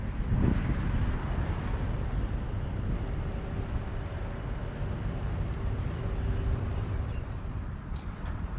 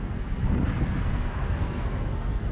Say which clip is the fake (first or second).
second